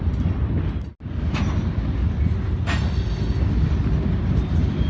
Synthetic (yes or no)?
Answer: no